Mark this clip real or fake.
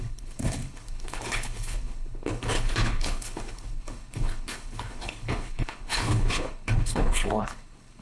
fake